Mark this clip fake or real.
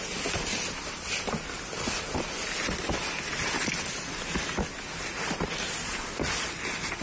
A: real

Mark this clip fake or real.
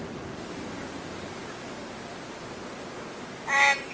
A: real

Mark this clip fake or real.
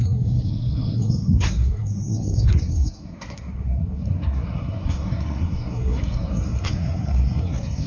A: fake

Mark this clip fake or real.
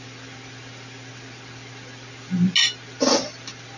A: real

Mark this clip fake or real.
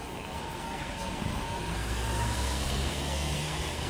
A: fake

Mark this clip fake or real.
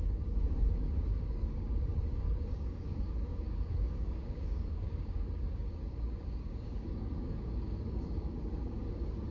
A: fake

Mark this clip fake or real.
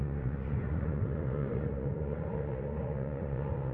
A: fake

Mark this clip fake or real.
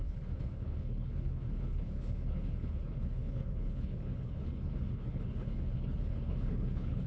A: fake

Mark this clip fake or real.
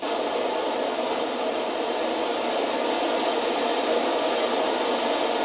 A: real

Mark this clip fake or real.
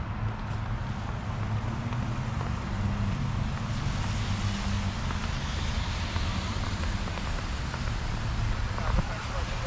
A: real